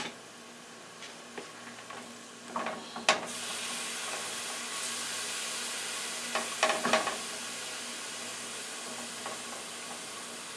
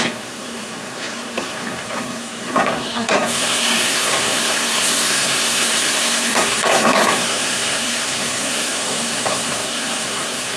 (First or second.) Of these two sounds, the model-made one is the second